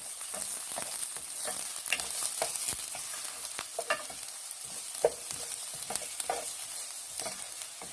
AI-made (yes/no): no